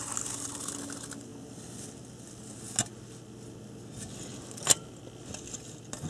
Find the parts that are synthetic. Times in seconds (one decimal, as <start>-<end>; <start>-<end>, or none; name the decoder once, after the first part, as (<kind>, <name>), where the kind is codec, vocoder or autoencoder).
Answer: none